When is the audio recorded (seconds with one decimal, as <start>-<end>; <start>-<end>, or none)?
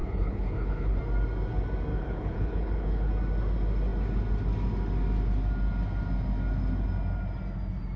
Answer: 1.0-1.9; 3.1-8.0